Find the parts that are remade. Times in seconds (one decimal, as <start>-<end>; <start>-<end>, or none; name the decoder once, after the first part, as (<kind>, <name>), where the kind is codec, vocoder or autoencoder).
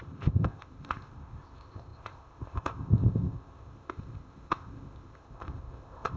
0.0-6.2 (codec, ZipCodec)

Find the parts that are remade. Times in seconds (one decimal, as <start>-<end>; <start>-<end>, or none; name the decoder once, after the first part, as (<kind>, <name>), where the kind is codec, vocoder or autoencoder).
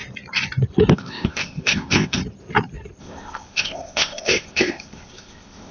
0.9-2.2 (codec, ZipCodec); 3.0-5.7